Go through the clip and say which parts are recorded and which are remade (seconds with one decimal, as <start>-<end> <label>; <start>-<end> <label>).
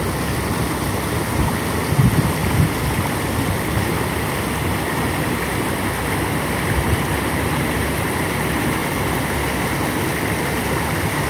0.0-11.3 recorded